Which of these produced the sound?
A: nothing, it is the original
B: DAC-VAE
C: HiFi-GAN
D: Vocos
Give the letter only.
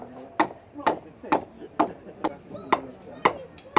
A